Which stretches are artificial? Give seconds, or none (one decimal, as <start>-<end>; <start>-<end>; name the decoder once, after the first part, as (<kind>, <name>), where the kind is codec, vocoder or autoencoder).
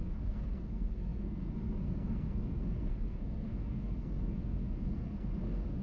0.0-5.8 (codec, SNAC)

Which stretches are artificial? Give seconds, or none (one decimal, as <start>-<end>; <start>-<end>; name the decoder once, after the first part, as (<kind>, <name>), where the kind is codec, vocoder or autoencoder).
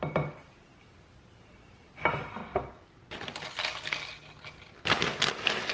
none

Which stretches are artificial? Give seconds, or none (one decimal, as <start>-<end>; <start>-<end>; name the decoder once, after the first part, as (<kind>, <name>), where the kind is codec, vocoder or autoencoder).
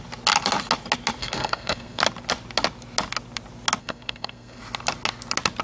1.2-2.0 (codec, SNAC); 3.8-4.6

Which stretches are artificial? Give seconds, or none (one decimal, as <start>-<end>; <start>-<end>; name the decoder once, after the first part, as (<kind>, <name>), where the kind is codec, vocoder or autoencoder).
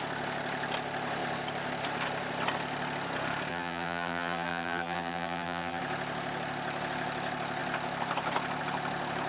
3.5-5.8 (vocoder, BigVGAN v2)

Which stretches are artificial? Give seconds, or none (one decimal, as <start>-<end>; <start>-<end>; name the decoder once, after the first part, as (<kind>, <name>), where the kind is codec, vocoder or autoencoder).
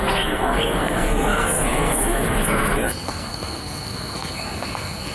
0.0-5.1 (codec, SNAC)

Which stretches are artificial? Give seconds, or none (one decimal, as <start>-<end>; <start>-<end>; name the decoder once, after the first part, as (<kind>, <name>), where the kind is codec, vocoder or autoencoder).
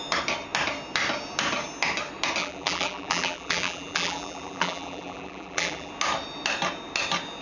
2.4-5.9 (vocoder, BigVGAN v2)